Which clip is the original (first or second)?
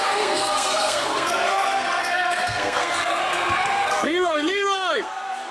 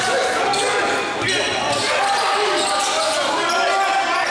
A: second